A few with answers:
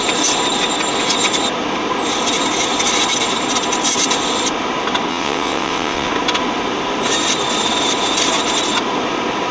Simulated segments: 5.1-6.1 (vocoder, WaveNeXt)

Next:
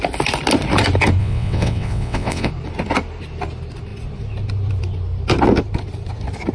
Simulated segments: 1.2-2.5 (vocoder, WaveNeXt)

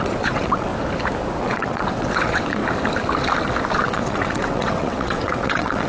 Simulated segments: 0.0-0.7 (vocoder, WaveNeXt); 1.4-2.6; 3.7-5.9

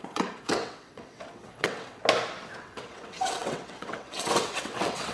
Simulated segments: 0.0-2.0 (vocoder, WaveNeXt); 2.6-5.1